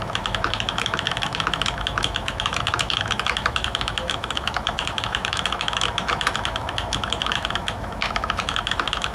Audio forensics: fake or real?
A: fake